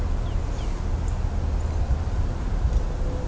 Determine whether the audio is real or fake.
real